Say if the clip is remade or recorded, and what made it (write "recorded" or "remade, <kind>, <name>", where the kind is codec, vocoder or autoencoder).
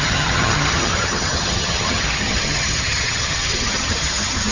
remade, vocoder, HiFi-GAN